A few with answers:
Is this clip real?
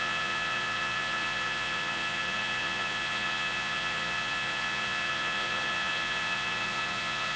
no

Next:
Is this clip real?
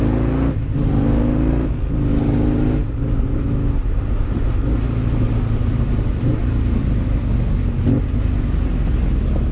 yes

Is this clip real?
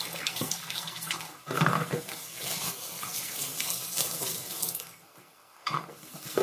no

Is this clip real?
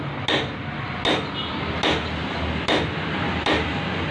yes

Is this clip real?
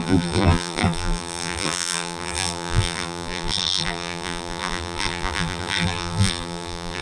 no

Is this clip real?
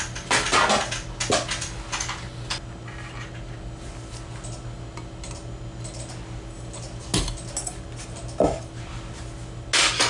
yes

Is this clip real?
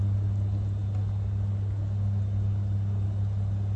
yes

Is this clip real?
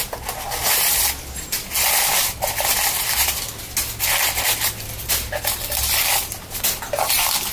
yes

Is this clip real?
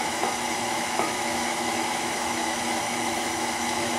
no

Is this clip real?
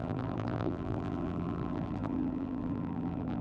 no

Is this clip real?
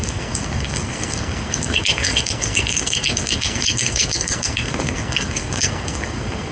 no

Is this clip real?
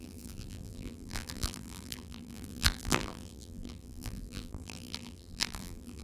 no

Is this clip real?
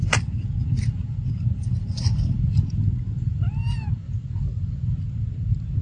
yes